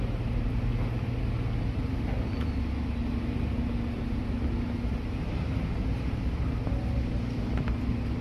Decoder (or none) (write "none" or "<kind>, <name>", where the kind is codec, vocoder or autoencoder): none